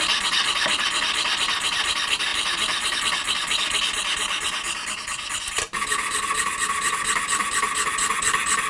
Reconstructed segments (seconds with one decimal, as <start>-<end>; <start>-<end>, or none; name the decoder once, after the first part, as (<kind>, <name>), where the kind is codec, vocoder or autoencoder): 2.3-3.0 (vocoder, BigVGAN v2)